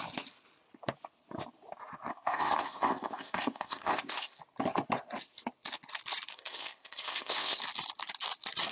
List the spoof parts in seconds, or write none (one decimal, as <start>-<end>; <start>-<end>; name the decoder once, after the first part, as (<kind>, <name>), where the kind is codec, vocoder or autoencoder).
2.1-4.4 (codec, ZipCodec); 6.3-7.6